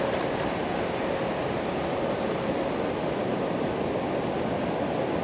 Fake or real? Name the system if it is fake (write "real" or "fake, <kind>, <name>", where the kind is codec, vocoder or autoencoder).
real